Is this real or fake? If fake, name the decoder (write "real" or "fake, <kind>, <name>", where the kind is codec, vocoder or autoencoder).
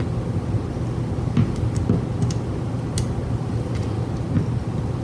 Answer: real